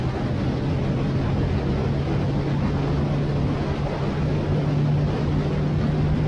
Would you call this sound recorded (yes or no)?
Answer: yes